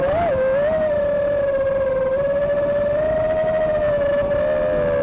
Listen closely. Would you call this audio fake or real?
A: real